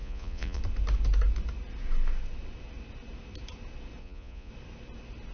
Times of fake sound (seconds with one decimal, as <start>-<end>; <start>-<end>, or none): 0.0-0.6; 4.0-4.5

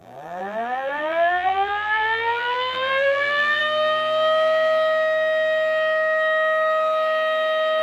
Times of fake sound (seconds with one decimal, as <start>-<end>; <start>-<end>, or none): 0.0-3.6

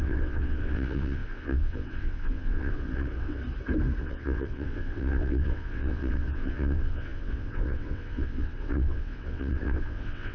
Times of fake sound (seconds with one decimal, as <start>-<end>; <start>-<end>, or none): 0.0-3.4; 4.0-10.3

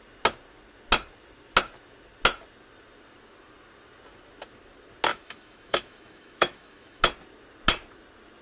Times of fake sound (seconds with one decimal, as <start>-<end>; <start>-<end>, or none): 5.1-7.0

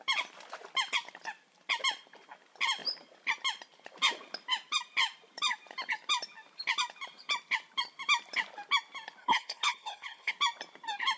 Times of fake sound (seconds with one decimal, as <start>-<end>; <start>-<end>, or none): 9.2-10.3

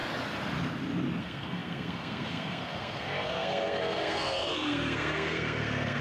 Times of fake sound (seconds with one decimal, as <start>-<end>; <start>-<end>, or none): 1.2-6.0

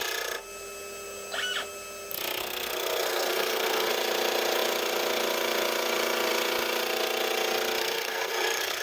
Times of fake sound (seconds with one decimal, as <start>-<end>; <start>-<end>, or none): 2.4-3.9; 7.8-8.8

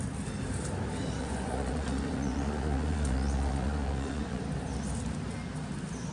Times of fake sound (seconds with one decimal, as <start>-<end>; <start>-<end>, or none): 1.2-4.4